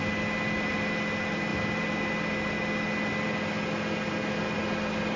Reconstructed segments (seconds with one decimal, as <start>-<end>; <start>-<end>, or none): none